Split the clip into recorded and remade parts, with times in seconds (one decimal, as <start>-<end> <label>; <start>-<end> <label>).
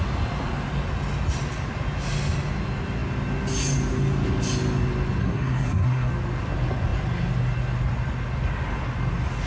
0.0-5.2 recorded; 5.2-6.1 remade; 6.1-9.5 recorded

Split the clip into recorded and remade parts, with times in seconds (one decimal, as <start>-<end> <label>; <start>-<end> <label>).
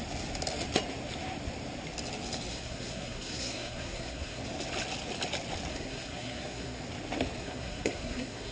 0.0-2.5 recorded; 2.5-4.4 remade; 4.4-5.7 recorded; 5.7-6.8 remade; 6.8-7.4 recorded; 7.4-8.5 remade